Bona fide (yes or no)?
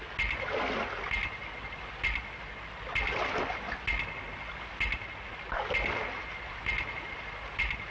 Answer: yes